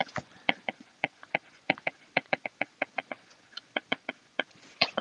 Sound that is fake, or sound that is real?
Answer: fake